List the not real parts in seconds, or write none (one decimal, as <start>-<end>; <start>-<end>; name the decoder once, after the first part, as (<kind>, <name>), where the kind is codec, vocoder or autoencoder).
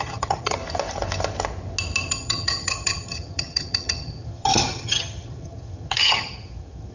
0.0-0.6 (vocoder, HiFi-GAN); 2.1-6.9